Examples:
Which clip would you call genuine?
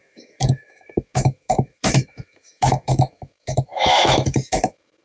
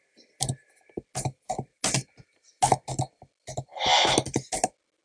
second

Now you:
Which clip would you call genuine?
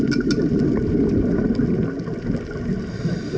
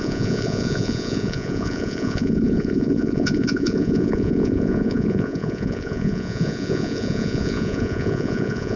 first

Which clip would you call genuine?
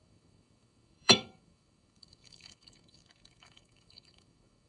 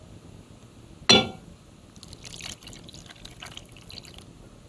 second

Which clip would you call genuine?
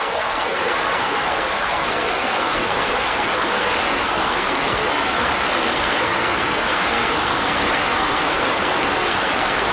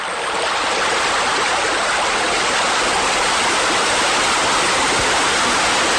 second